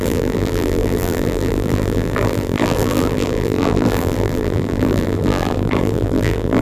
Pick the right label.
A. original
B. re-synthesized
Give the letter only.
B